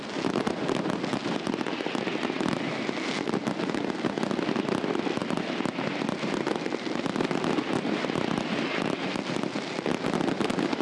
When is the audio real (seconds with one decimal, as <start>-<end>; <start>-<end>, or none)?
0.0-10.8